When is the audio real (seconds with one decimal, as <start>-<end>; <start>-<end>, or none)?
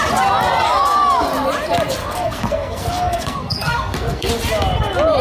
0.0-2.0; 4.3-5.2